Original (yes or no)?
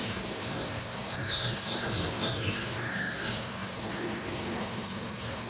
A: no